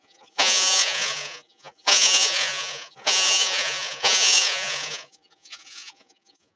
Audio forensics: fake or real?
fake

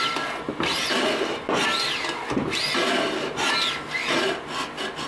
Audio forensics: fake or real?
real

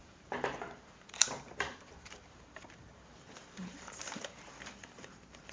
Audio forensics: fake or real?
fake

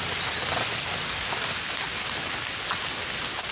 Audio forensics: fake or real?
real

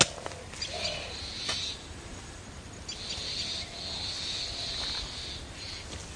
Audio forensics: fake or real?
real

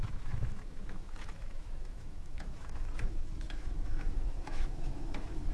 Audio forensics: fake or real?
fake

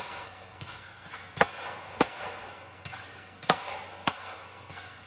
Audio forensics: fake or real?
fake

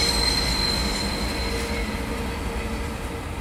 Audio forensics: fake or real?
real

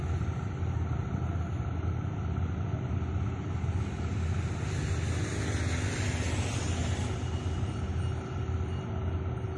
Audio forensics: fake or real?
real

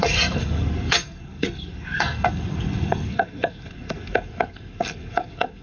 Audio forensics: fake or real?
fake